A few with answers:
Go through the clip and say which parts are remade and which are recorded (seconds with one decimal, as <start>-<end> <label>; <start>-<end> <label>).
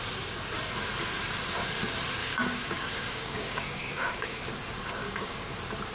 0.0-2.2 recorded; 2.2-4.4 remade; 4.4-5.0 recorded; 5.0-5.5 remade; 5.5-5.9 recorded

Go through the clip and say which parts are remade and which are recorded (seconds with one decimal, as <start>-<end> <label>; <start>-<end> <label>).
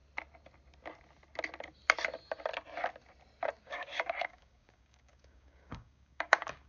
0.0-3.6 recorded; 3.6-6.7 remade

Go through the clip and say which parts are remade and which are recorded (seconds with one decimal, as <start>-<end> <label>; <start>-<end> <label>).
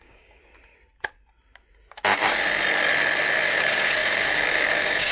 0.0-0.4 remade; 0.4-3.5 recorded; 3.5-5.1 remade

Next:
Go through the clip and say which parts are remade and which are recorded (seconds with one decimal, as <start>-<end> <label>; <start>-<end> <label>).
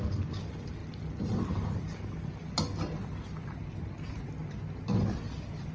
0.0-5.7 recorded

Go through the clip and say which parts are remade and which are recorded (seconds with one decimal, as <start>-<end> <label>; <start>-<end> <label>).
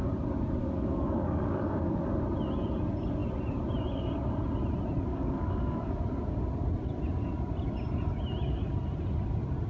0.0-0.6 recorded; 0.6-2.0 remade; 2.0-5.1 recorded; 5.1-6.0 remade; 6.0-9.7 recorded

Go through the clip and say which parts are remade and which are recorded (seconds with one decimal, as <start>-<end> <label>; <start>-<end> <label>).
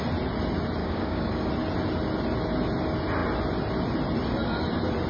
0.0-0.8 recorded; 0.8-1.5 remade; 1.5-5.1 recorded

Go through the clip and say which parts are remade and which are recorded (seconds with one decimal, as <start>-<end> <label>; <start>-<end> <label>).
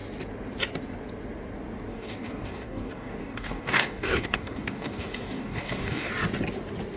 0.0-1.9 recorded; 1.9-6.1 remade; 6.1-7.0 recorded